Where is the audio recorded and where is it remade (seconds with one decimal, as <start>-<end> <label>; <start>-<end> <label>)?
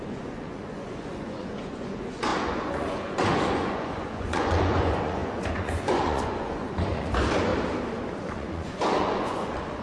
0.0-7.5 remade; 7.5-8.2 recorded; 8.2-9.8 remade